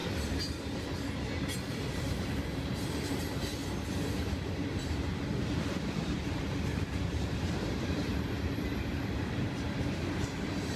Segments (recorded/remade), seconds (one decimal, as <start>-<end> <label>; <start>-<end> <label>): 0.0-1.7 recorded; 1.7-3.6 remade; 3.6-4.2 recorded; 4.2-8.1 remade; 8.1-9.8 recorded; 9.8-10.8 remade